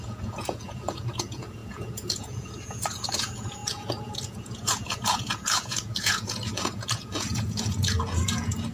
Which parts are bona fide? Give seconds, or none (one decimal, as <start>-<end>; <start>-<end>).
none